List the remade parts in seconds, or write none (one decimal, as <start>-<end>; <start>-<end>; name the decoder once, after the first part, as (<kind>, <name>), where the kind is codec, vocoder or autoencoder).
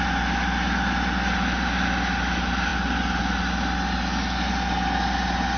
none